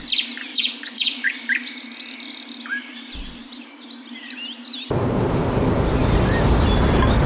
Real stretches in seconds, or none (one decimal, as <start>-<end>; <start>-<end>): 0.0-0.5; 1.3-7.3